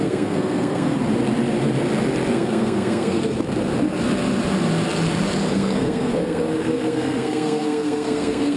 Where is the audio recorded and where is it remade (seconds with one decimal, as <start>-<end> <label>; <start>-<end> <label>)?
0.0-1.0 remade; 1.0-2.3 recorded; 2.3-3.2 remade; 3.2-5.5 recorded; 5.5-8.6 remade

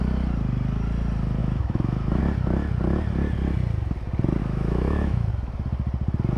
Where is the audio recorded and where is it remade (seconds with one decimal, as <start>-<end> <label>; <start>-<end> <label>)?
0.0-1.4 recorded; 1.4-2.2 remade; 2.2-4.4 recorded; 4.4-5.3 remade; 5.3-6.4 recorded

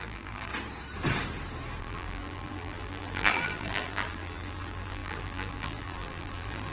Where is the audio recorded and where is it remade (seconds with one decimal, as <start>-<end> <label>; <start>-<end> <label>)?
0.0-0.5 remade; 0.5-1.8 recorded; 1.8-6.7 remade